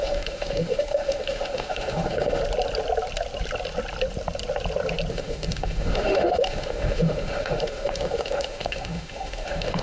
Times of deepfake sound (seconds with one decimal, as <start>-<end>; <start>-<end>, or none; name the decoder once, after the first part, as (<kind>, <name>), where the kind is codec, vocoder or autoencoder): 0.0-2.4 (autoencoder, DAC-VAE); 5.1-9.8

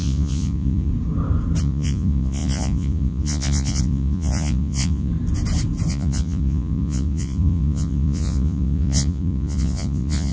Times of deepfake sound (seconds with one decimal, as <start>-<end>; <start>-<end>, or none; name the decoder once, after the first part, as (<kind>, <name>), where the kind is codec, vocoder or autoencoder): 0.0-0.9 (vocoder, Vocos); 1.6-5.1; 5.9-10.3

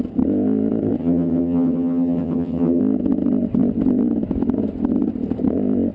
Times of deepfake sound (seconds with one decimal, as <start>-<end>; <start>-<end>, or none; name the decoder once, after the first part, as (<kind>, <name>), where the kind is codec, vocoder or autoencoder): 1.0-2.8 (vocoder, HiFi-GAN)

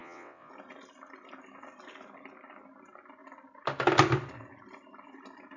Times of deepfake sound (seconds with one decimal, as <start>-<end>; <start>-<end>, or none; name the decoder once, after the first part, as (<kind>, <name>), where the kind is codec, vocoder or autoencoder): 0.0-0.5 (vocoder, WaveNeXt)

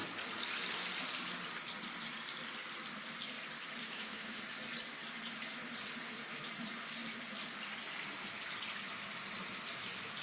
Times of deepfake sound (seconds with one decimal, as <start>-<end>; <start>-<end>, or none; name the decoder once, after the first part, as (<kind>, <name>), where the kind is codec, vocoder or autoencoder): 3.8-4.4 (autoencoder, DAC-VAE)

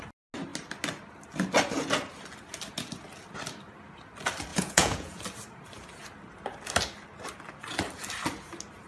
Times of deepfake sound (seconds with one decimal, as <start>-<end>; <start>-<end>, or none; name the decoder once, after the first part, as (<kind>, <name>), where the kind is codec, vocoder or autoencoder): 4.5-5.2 (vocoder, Vocos)